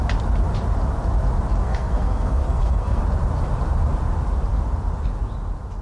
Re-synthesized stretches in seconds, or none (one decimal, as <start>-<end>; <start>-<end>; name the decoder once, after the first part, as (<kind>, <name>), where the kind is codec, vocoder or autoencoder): 1.6-3.0 (codec, SNAC)